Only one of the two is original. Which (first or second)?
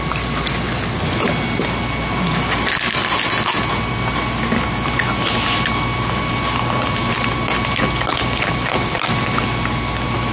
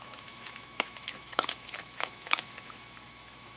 first